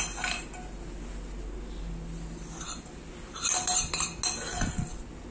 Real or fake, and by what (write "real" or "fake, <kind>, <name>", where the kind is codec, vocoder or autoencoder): real